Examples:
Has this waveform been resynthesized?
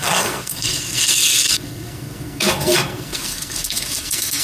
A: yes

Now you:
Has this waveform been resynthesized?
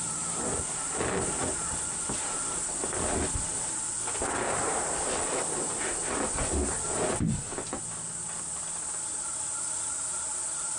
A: no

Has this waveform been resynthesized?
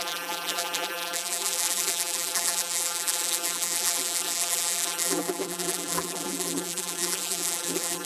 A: yes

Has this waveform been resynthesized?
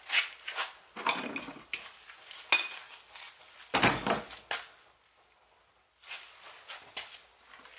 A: no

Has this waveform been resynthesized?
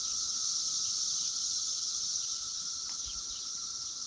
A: no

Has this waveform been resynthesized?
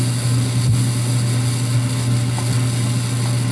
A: no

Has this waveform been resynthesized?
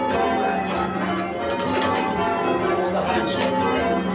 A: no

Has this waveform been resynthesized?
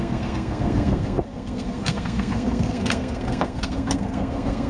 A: yes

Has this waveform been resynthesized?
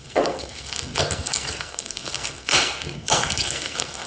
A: yes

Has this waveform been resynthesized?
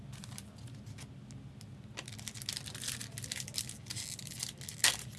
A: no